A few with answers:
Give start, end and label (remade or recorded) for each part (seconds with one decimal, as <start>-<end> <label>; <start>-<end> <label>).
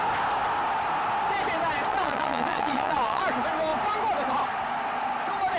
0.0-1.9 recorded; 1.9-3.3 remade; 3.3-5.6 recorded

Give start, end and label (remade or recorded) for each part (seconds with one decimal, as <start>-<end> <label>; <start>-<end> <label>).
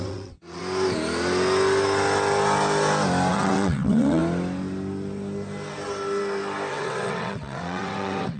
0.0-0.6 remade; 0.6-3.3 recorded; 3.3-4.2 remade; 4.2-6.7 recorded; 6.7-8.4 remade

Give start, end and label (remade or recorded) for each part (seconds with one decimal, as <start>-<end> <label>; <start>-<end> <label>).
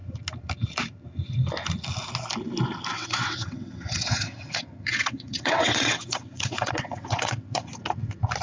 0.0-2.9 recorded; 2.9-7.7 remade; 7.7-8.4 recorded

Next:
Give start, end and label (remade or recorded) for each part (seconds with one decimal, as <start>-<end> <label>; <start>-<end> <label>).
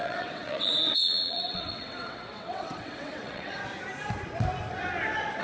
0.0-3.6 remade; 3.6-5.4 recorded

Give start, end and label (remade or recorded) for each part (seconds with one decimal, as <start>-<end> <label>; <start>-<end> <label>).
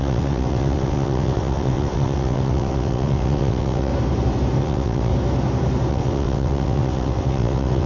0.0-3.9 remade; 3.9-4.6 recorded; 4.6-5.1 remade; 5.1-5.9 recorded; 5.9-7.9 remade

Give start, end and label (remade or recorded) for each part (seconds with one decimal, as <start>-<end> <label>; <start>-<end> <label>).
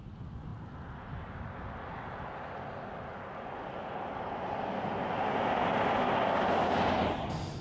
0.0-7.6 recorded